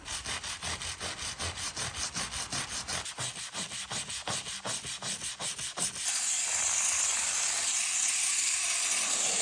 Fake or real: real